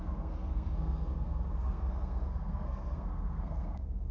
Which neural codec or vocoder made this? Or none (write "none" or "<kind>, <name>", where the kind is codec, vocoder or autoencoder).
codec, SNAC